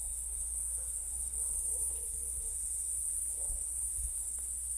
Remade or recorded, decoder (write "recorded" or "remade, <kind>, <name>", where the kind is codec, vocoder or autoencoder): remade, codec, SNAC